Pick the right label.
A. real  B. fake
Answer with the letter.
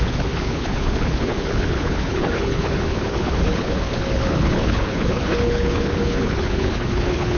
B